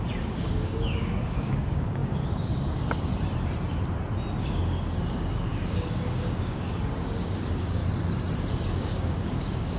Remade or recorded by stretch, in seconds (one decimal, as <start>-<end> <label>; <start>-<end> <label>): 0.0-3.1 remade; 3.1-4.4 recorded; 4.4-7.8 remade; 7.8-8.5 recorded; 8.5-9.8 remade